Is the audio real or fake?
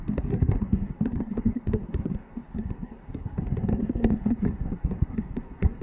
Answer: fake